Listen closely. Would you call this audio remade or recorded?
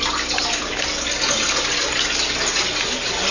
recorded